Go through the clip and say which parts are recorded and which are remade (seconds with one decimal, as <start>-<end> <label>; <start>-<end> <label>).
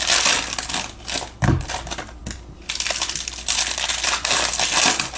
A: 0.0-5.2 recorded